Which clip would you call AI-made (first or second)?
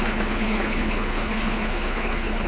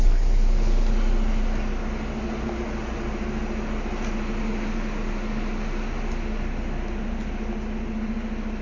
first